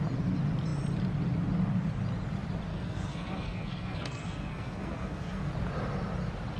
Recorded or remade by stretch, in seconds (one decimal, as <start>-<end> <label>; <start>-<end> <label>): 0.0-2.7 recorded; 2.7-5.5 remade; 5.5-6.6 recorded